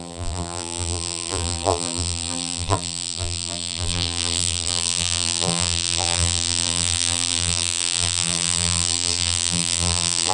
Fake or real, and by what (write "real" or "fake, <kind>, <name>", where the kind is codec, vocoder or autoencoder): fake, vocoder, BigVGAN v2